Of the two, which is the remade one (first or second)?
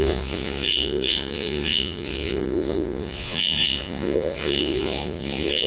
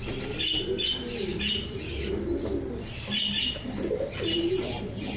first